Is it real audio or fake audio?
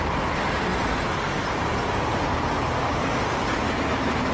real